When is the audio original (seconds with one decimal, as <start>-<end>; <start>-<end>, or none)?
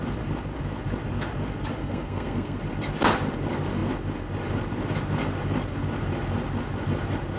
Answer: 0.0-1.8; 2.6-7.4